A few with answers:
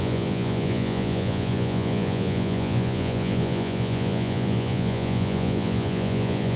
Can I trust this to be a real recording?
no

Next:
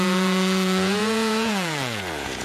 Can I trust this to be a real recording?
no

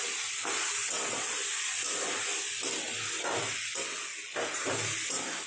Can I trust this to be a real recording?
yes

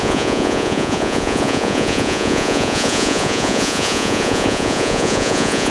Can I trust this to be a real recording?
no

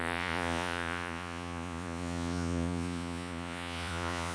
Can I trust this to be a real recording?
no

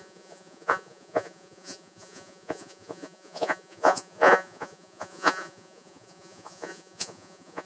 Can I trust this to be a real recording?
no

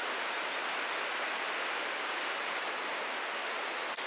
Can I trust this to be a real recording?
yes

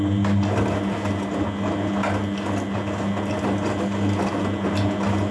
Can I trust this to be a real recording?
yes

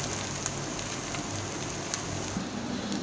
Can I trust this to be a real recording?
yes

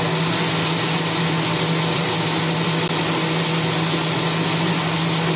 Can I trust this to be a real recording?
yes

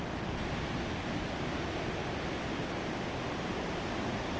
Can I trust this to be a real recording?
yes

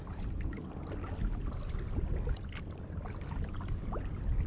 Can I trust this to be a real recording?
yes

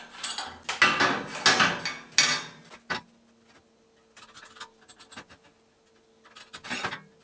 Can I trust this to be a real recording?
yes